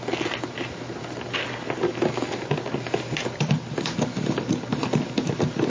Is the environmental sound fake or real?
real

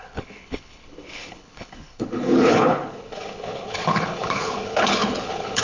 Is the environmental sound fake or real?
fake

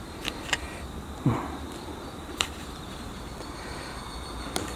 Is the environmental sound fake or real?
fake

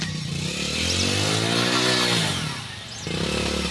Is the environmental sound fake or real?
real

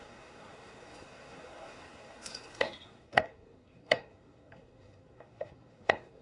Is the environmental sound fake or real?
fake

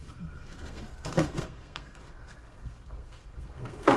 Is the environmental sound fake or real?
fake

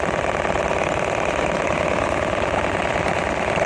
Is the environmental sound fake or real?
real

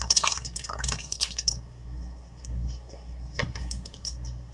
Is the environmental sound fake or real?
fake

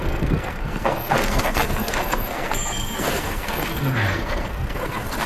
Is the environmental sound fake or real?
fake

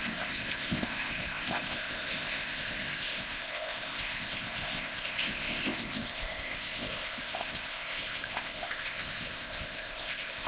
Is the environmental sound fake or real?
fake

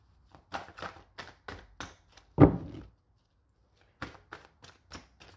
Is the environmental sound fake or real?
real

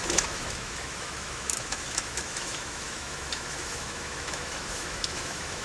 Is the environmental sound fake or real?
fake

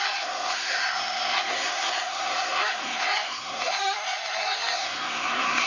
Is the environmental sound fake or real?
fake